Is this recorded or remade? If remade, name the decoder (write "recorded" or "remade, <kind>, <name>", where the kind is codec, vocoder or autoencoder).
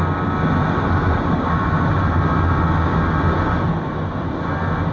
recorded